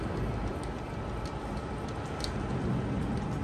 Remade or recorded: recorded